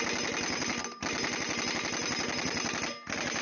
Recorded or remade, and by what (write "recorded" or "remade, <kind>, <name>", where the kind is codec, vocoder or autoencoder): recorded